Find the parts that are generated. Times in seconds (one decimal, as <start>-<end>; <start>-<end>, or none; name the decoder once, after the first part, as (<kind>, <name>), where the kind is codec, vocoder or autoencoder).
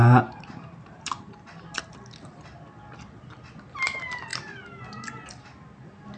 0.0-1.8 (vocoder, BigVGAN v2)